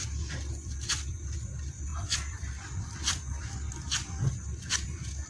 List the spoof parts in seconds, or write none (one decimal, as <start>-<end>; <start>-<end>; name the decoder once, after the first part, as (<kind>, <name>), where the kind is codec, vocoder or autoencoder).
none